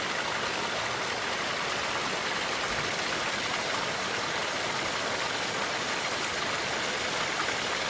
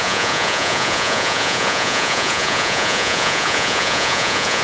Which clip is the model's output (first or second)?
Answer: second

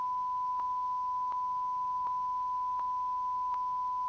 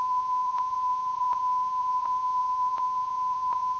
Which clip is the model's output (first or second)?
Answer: second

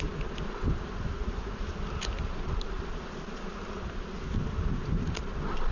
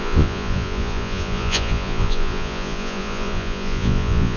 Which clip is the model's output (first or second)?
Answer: second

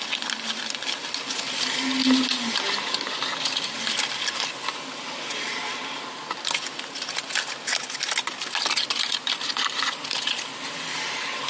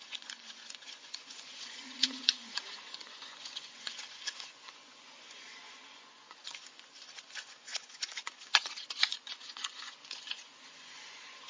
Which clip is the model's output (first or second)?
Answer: second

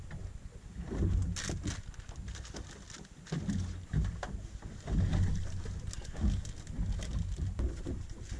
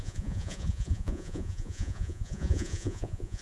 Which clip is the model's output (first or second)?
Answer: second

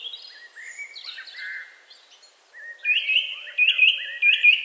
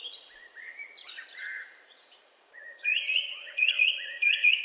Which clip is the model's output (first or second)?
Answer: second